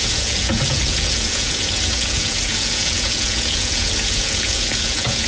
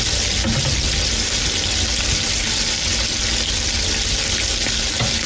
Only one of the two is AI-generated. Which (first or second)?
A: first